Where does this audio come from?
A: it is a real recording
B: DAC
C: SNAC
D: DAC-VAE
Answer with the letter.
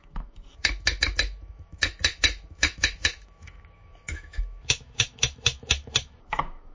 D